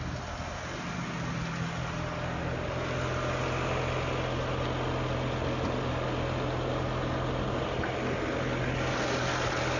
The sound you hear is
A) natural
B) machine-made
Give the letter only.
A